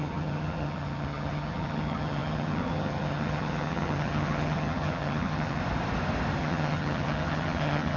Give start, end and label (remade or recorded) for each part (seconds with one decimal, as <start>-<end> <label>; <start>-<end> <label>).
0.0-5.6 remade; 5.6-6.4 recorded; 6.4-8.0 remade